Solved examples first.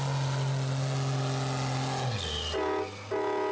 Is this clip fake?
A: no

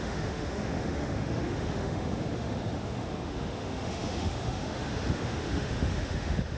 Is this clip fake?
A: yes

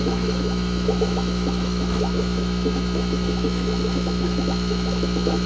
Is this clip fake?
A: yes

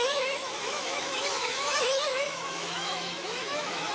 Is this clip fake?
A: yes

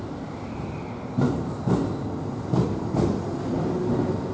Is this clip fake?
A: no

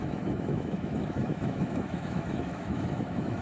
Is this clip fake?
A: yes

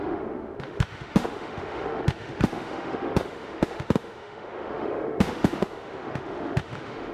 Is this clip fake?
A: yes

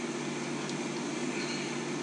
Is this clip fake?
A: no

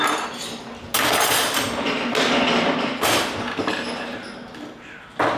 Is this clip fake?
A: no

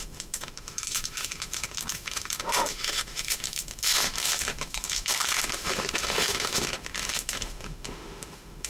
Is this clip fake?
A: yes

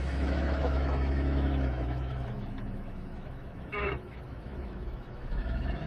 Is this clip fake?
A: yes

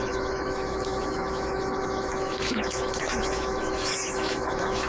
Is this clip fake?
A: yes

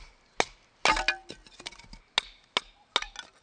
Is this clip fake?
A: no